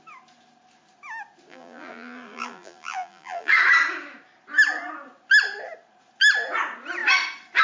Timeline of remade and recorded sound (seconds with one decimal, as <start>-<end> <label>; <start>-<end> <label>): 0.0-1.5 recorded; 1.5-3.5 remade; 3.5-7.6 recorded